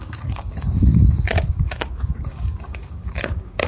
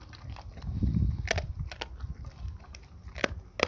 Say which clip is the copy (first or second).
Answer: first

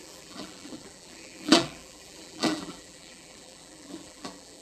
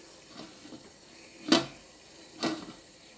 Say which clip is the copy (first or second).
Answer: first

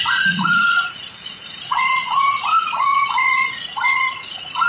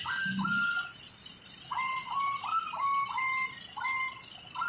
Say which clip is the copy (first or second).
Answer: first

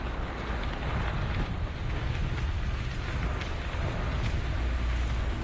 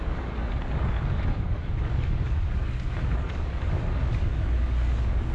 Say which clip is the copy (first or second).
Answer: second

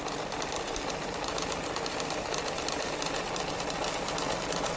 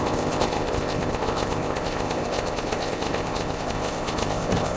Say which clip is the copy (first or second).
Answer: second